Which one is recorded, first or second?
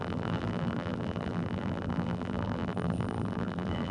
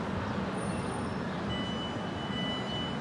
second